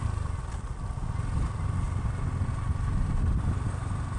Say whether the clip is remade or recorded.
recorded